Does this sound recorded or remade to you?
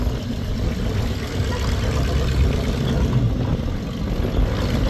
recorded